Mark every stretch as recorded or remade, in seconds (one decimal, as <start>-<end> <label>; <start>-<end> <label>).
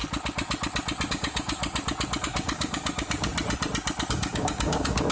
0.0-1.1 recorded; 1.1-1.6 remade; 1.6-2.2 recorded; 2.2-3.3 remade; 3.3-4.1 recorded; 4.1-5.1 remade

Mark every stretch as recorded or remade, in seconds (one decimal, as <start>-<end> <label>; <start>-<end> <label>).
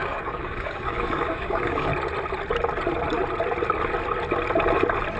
0.0-1.9 remade; 1.9-5.2 recorded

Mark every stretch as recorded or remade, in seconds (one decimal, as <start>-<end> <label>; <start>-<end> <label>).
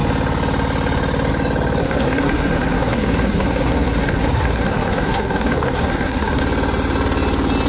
0.0-1.8 recorded; 1.8-6.4 remade; 6.4-7.7 recorded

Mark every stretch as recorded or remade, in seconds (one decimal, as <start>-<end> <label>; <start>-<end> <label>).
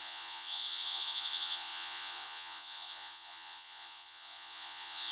0.0-5.1 remade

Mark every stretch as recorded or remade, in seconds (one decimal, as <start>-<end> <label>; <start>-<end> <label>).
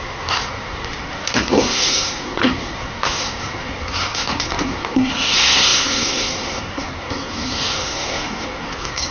0.0-9.1 remade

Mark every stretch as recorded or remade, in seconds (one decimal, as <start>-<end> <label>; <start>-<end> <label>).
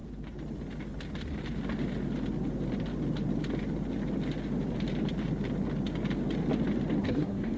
0.0-7.0 recorded; 7.0-7.6 remade